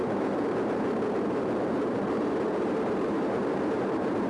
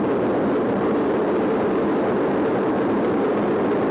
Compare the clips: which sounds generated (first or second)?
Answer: first